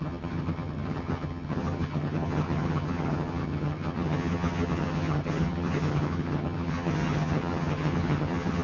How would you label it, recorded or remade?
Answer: remade